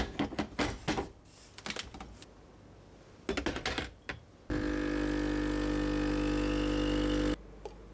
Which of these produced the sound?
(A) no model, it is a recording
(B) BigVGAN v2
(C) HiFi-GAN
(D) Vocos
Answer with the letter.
A